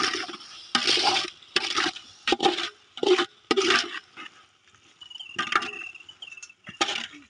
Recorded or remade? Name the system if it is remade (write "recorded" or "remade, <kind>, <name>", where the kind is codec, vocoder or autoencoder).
recorded